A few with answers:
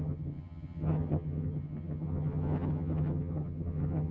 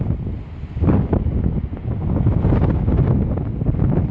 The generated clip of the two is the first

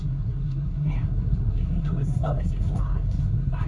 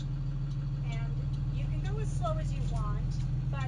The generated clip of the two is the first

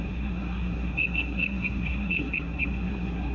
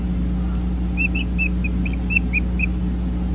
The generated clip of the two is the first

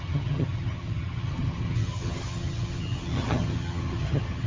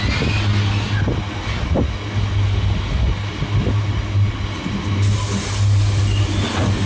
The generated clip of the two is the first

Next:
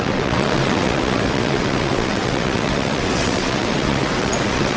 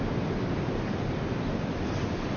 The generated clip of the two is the first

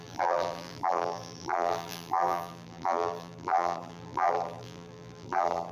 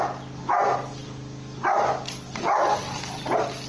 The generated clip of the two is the first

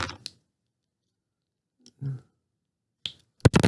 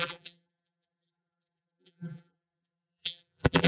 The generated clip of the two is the second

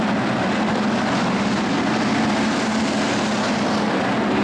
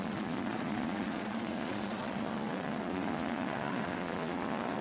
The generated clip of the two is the second